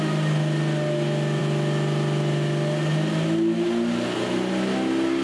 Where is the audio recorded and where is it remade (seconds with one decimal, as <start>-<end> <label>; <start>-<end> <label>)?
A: 0.0-5.2 recorded